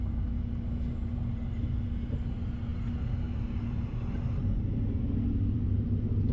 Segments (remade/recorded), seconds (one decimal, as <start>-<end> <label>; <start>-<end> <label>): 0.0-6.3 recorded